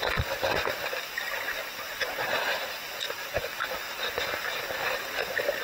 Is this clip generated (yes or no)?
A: no